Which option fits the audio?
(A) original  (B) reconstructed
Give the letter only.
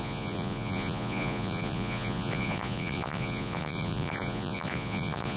B